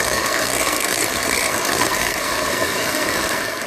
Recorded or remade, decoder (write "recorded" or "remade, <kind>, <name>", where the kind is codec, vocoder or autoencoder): remade, codec, SNAC